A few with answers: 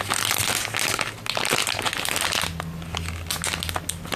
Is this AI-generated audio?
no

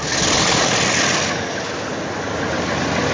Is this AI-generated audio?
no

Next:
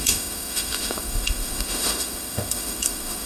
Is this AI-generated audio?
yes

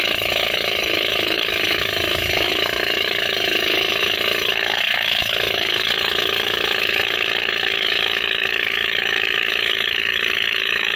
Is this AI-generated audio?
yes